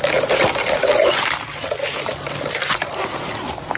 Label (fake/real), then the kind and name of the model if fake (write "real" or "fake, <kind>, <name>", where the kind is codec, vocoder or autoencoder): real